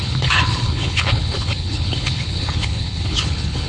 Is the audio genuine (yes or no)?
no